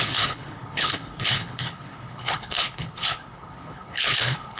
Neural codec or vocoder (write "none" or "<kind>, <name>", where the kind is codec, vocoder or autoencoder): codec, HILCodec